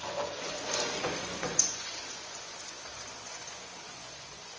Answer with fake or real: fake